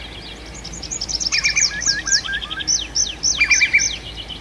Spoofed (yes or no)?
no